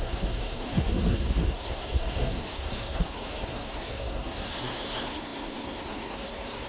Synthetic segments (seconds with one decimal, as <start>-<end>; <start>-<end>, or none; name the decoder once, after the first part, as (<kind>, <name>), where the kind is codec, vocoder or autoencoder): 0.0-6.7 (codec, SNAC)